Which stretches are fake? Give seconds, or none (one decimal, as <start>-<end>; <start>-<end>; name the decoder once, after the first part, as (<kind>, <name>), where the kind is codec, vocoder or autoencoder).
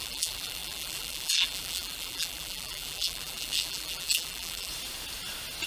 0.0-4.7 (vocoder, BigVGAN v2)